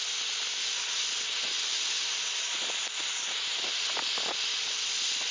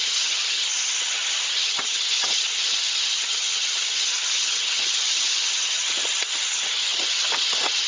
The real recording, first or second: first